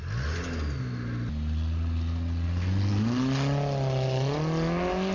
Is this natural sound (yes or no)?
yes